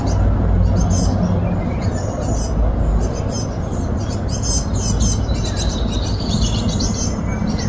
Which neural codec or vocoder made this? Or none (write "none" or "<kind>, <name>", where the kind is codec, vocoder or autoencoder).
none